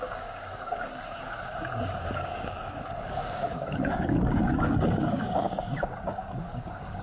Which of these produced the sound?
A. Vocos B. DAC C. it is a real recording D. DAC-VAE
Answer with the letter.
B